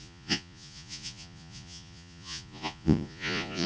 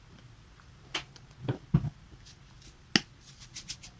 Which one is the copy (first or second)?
first